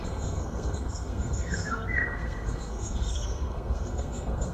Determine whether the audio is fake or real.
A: fake